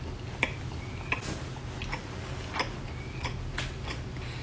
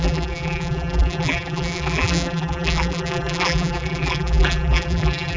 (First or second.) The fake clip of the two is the second